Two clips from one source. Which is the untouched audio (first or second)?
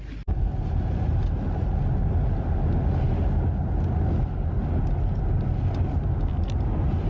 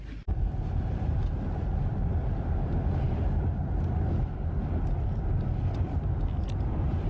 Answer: first